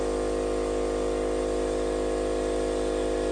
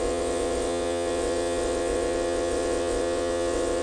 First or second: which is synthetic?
second